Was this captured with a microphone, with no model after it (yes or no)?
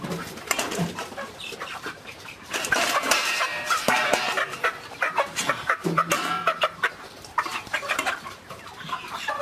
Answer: no